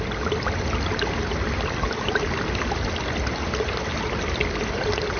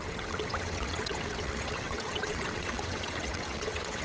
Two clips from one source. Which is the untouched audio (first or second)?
first